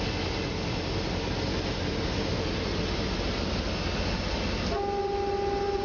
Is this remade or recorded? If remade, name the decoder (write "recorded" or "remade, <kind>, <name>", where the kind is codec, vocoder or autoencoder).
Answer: recorded